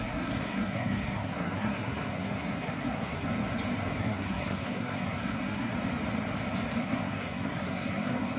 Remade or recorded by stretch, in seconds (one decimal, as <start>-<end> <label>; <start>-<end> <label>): 0.0-3.3 remade; 3.3-4.0 recorded; 4.0-5.7 remade; 5.7-6.8 recorded; 6.8-8.4 remade